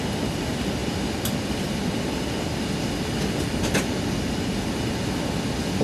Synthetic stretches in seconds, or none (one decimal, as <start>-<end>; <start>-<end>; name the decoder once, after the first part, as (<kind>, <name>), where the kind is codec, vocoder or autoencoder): none